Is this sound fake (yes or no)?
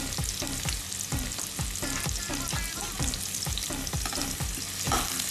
no